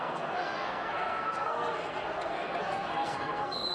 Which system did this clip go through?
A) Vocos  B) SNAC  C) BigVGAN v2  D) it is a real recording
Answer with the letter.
B